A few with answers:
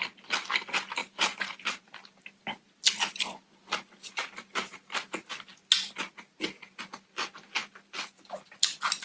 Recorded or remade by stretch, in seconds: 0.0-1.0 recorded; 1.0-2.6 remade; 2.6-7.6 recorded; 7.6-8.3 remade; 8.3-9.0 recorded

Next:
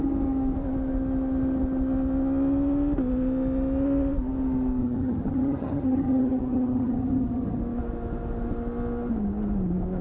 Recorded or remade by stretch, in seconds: 0.0-4.8 recorded; 4.8-7.6 remade; 7.6-10.0 recorded

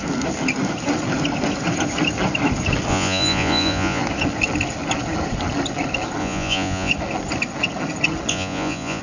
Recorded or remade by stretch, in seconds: 0.0-2.9 recorded; 2.9-4.0 remade; 4.0-6.2 recorded; 6.2-6.9 remade; 6.9-8.3 recorded; 8.3-9.0 remade

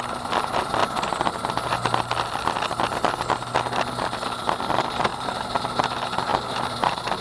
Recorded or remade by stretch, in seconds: 0.0-5.1 recorded; 5.1-5.6 remade; 5.6-6.3 recorded; 6.3-7.2 remade

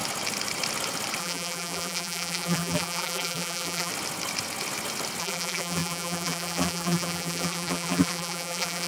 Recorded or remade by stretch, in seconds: 0.0-1.2 recorded; 1.2-3.9 remade; 3.9-5.2 recorded; 5.2-8.9 remade